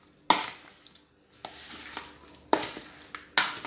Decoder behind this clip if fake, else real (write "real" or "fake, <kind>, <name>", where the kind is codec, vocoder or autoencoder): real